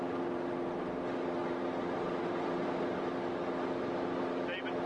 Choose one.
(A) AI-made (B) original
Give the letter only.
B